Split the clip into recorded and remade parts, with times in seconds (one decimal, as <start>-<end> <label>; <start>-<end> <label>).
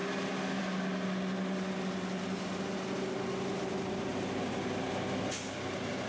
0.0-6.1 recorded